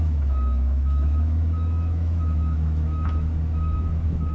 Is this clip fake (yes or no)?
yes